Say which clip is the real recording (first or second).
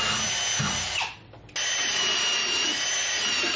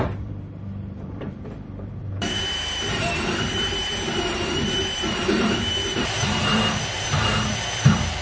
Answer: first